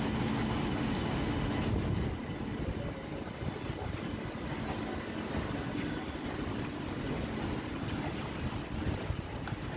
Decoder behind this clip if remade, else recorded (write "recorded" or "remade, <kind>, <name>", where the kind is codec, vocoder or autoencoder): recorded